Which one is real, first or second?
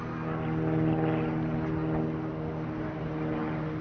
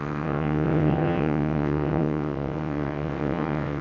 first